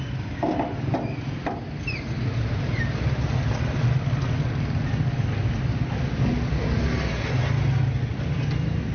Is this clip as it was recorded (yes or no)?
yes